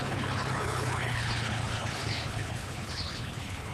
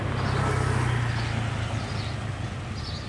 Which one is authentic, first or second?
second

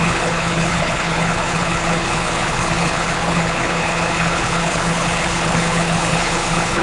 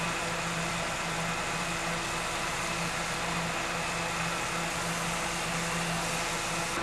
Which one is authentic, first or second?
second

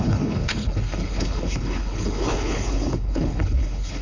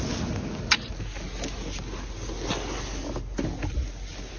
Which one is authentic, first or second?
second